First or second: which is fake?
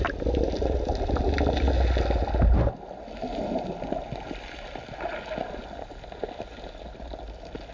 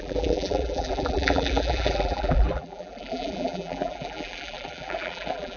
second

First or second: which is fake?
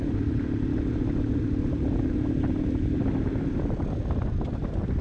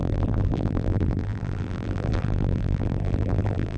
second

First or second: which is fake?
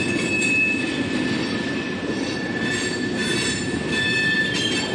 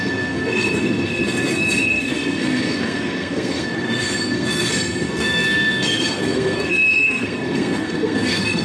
second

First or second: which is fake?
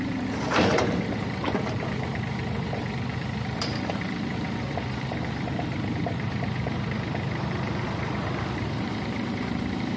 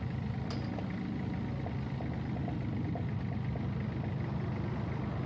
first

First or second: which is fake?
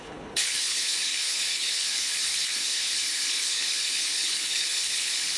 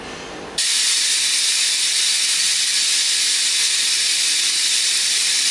first